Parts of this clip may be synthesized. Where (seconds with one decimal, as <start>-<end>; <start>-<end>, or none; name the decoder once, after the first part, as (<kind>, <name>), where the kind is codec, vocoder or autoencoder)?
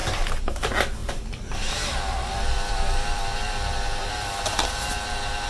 0.0-0.6 (vocoder, BigVGAN v2); 1.0-4.1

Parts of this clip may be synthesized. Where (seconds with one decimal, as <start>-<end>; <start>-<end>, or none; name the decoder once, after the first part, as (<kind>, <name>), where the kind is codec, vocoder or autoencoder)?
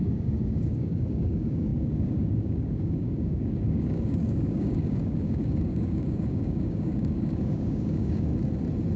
0.0-8.3 (codec, DAC)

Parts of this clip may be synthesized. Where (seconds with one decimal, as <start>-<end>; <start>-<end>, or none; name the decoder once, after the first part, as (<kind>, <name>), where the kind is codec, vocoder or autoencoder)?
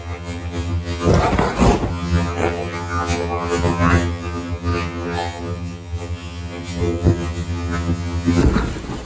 0.0-1.1 (vocoder, HiFi-GAN); 1.9-8.4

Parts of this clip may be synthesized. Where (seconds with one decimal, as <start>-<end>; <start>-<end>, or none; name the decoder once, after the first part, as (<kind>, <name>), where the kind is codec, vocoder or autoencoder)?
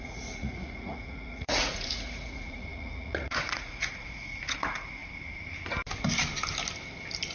0.0-5.0 (vocoder, Vocos)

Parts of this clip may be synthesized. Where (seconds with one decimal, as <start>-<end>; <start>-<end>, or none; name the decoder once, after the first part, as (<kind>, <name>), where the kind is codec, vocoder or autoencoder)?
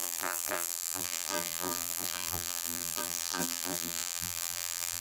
0.0-5.0 (vocoder, BigVGAN v2)